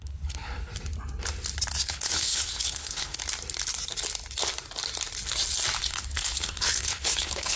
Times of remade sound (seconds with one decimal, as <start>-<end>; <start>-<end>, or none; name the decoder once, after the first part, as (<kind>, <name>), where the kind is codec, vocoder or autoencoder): 0.0-0.7 (codec, HILCodec); 1.8-3.2; 5.8-7.6